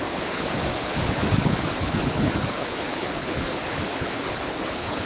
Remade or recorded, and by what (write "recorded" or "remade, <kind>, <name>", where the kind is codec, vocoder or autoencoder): remade, codec, HILCodec